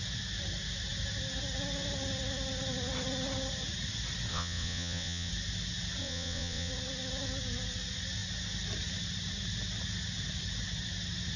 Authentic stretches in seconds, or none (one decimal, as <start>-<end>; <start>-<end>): 0.0-4.3; 5.3-6.0; 6.7-11.4